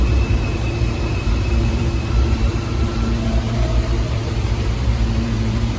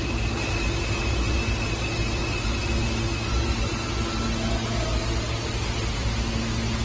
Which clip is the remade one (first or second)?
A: first